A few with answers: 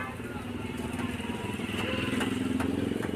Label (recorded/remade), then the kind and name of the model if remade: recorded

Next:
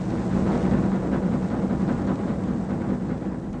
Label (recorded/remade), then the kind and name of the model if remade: recorded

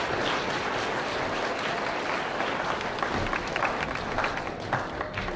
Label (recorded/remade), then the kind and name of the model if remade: recorded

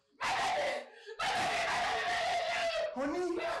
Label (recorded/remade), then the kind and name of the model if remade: recorded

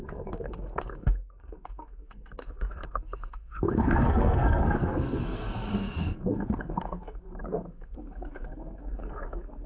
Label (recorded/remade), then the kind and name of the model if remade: remade, codec, SNAC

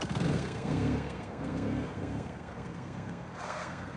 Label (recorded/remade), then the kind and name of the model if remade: remade, codec, SNAC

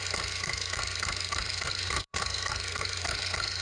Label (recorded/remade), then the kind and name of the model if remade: remade, codec, SNAC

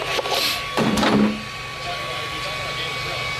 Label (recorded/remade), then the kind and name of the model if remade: recorded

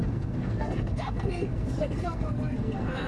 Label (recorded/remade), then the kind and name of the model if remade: remade, codec, SNAC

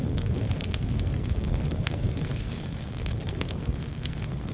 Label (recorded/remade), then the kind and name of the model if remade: remade, codec, SNAC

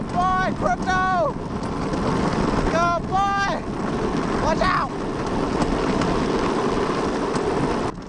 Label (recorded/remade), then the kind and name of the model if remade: recorded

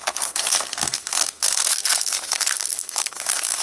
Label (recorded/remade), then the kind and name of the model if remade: remade, codec, SNAC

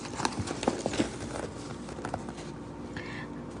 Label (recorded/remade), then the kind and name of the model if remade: recorded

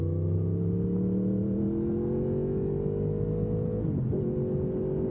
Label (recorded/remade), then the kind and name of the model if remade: recorded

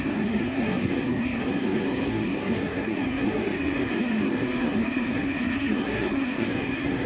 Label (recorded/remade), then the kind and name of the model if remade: remade, codec, SNAC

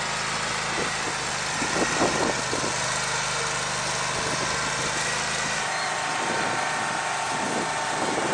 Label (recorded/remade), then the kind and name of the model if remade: recorded